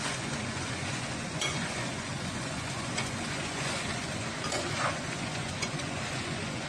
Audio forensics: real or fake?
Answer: fake